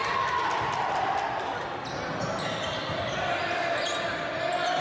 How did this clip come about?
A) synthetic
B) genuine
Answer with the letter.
B